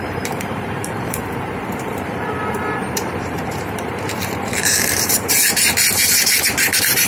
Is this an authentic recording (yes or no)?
no